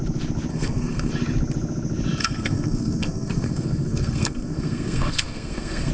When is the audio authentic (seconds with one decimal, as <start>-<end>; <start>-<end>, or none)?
0.0-0.5; 1.1-2.2